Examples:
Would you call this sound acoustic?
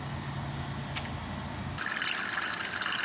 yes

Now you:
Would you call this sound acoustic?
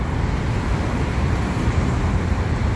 no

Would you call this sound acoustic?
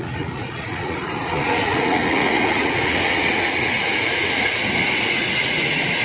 no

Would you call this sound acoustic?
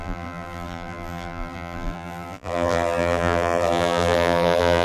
no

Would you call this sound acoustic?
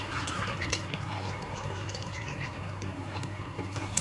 no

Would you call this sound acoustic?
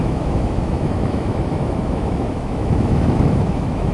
no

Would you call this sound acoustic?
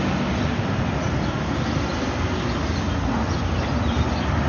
yes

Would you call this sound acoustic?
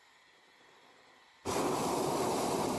yes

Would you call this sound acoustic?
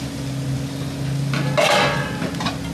yes